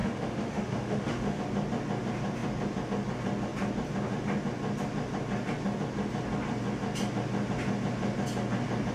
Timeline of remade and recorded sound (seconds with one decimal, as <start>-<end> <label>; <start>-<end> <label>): 0.0-1.4 remade; 1.4-8.9 recorded